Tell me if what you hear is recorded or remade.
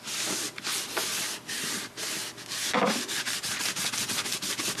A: recorded